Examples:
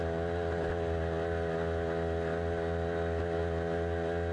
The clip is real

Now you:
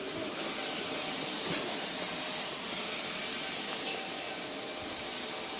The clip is real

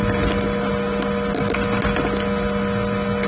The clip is real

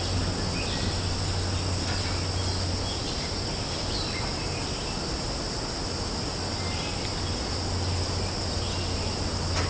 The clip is real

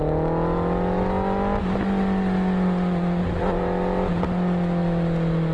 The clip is real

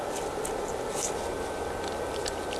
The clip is real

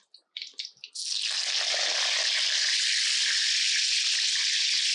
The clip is real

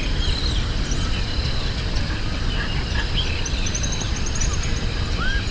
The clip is real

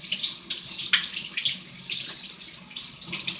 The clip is real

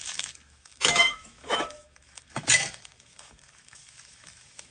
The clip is fake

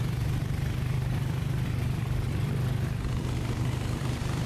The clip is fake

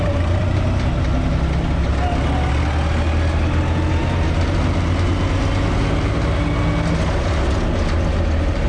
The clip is real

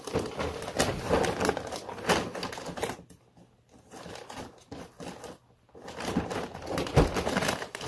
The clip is real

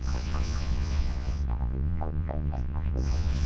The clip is fake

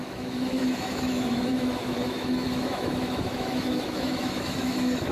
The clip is fake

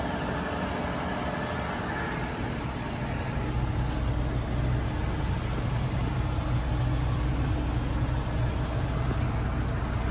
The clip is real